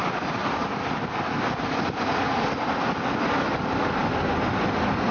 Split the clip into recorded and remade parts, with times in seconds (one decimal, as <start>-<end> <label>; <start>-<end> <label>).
0.0-5.1 recorded